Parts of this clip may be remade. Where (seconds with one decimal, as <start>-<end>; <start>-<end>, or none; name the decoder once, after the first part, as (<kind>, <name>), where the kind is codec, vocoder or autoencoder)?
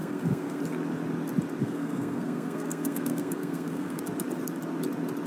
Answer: 0.0-0.6 (codec, SNAC); 1.6-4.0